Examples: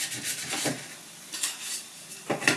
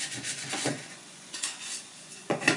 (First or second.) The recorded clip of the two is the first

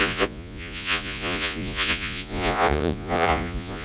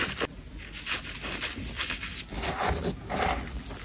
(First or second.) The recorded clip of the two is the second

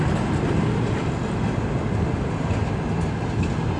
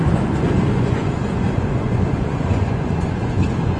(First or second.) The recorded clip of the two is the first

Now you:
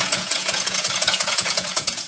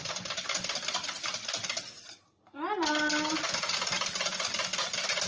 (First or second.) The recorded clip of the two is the second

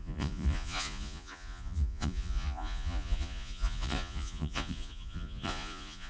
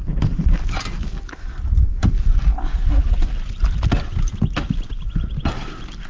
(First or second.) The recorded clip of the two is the second